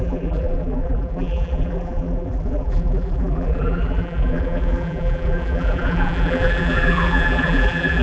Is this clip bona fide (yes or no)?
no